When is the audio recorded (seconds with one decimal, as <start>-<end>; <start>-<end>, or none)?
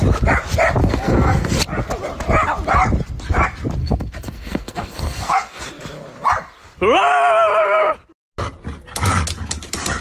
0.0-0.8; 1.6-3.8; 5.6-10.0